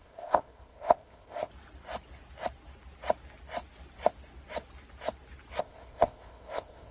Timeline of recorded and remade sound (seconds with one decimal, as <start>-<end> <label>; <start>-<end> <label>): 0.0-1.5 remade; 1.5-5.6 recorded; 5.6-6.9 remade